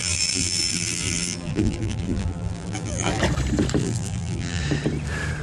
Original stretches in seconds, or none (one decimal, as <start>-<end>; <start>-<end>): 3.2-3.8; 4.6-5.4